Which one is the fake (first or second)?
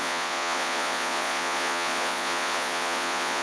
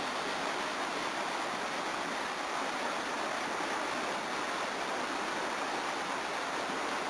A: first